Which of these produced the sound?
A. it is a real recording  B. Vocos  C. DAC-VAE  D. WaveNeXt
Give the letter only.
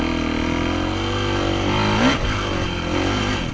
A